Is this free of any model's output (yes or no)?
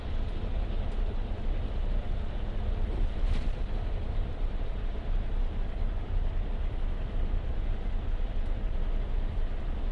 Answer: no